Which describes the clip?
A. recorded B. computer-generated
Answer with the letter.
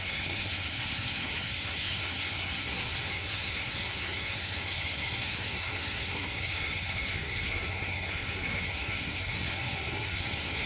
B